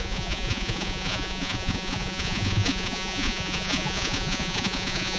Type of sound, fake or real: fake